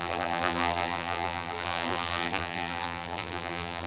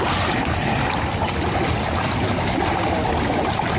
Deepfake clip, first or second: first